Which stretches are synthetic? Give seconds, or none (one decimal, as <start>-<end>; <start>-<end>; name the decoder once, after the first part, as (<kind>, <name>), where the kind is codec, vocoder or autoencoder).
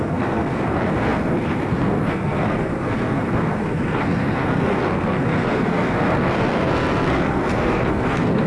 0.0-8.5 (codec, SNAC)